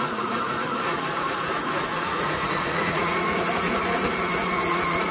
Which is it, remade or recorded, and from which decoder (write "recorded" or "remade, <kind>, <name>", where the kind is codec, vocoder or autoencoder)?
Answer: remade, vocoder, Vocos